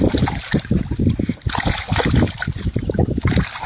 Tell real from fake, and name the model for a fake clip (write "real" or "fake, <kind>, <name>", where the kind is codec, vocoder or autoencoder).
real